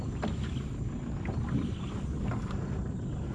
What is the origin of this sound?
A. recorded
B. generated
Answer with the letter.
A